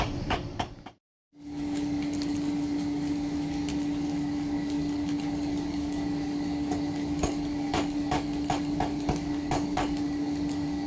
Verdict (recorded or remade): remade